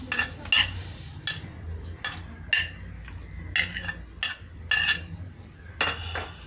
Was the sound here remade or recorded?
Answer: recorded